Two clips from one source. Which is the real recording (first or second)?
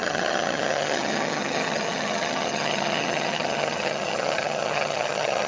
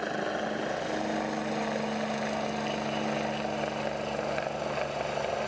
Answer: second